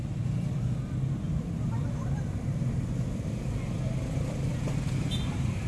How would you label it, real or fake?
real